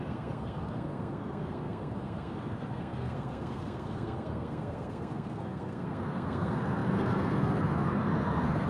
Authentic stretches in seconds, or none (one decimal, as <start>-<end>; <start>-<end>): none